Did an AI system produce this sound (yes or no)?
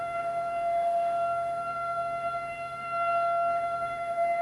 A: yes